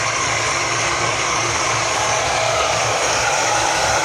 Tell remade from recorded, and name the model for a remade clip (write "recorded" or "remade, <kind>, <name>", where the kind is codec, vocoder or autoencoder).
remade, codec, DAC